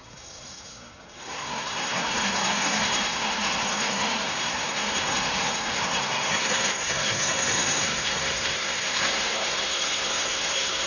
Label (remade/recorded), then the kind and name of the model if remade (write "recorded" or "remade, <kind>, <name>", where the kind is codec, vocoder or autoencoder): remade, codec, SNAC